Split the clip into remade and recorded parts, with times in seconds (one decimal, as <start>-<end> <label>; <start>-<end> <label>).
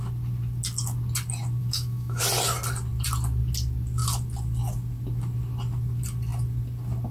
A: 0.0-1.6 recorded; 1.6-2.2 remade; 2.2-7.1 recorded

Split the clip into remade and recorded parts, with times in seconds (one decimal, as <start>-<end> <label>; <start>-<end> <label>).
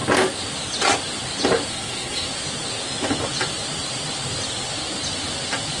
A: 0.0-1.7 recorded; 1.7-2.3 remade; 2.3-5.8 recorded